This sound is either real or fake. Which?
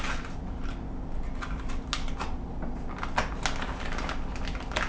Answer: real